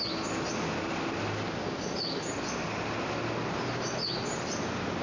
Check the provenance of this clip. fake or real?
real